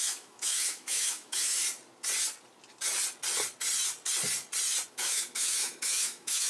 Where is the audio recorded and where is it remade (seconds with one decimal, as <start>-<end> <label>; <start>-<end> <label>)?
0.0-1.6 remade; 1.6-4.9 recorded; 4.9-6.5 remade